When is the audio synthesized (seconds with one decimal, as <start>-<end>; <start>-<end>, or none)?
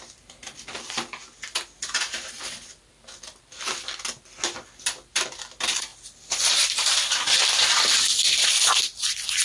0.0-1.2; 3.4-9.4